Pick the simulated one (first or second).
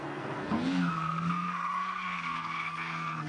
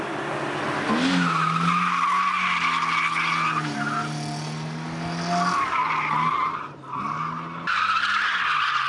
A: first